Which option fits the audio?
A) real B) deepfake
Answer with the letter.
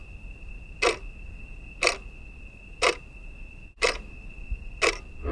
A